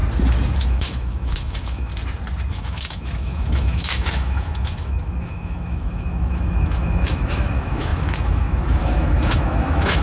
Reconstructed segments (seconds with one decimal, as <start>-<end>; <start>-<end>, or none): 0.6-1.9; 2.5-10.0